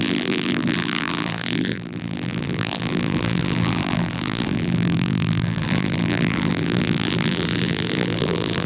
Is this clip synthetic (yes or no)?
yes